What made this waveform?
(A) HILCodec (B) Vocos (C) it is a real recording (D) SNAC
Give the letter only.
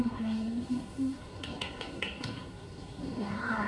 D